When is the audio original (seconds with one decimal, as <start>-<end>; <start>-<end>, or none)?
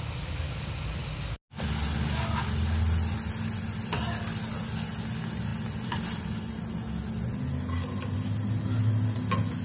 0.0-5.5; 6.7-9.6